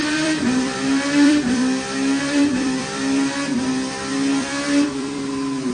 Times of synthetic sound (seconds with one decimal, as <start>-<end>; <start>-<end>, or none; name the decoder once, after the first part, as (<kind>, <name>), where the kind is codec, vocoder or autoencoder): 0.0-1.6 (vocoder, BigVGAN v2); 2.2-5.7